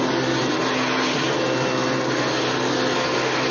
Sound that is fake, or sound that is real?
real